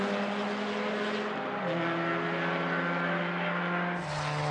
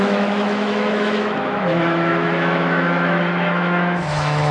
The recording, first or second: first